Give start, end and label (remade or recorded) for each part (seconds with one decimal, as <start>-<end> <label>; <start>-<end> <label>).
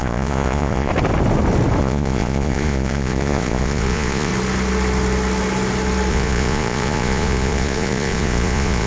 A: 0.0-0.9 remade; 0.9-1.8 recorded; 1.8-4.3 remade; 4.3-6.1 recorded; 6.1-8.9 remade